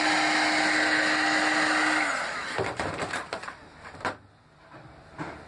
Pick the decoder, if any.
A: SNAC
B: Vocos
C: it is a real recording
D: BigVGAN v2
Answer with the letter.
C